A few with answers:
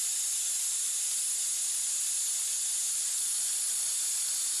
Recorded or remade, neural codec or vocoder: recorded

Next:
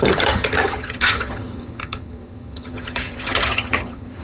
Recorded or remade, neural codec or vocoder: remade, vocoder, HiFi-GAN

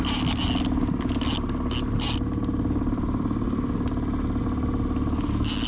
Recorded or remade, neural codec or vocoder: recorded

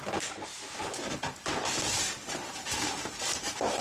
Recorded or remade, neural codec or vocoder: remade, vocoder, BigVGAN v2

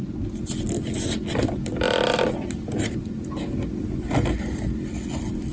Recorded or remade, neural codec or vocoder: recorded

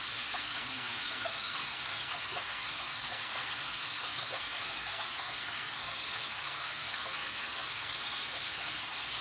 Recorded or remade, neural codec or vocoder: remade, codec, SNAC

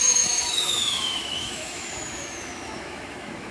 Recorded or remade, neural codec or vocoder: remade, autoencoder, DAC-VAE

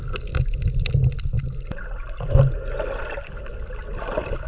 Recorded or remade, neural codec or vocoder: recorded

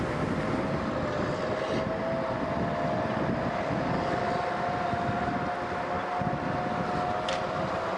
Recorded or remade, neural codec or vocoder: recorded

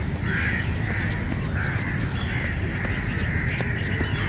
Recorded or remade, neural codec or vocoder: recorded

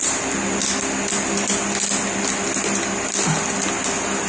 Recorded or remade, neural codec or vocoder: recorded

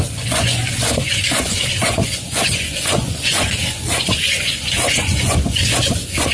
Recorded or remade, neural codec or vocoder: remade, vocoder, Vocos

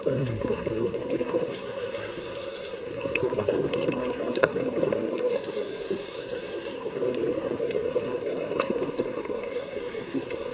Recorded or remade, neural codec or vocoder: remade, codec, SNAC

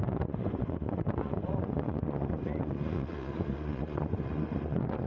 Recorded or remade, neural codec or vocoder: remade, vocoder, Vocos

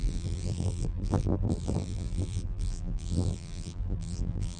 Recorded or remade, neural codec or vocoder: remade, vocoder, BigVGAN v2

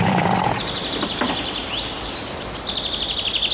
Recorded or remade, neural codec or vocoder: recorded